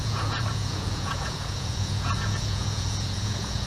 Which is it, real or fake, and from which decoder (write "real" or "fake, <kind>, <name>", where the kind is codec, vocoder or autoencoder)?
fake, vocoder, Vocos